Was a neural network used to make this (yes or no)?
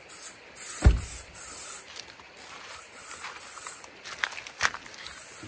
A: no